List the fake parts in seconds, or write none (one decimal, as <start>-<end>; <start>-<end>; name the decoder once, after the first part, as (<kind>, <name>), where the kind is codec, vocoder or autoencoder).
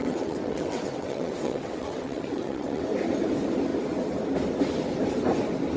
0.0-2.8 (vocoder, WaveNeXt)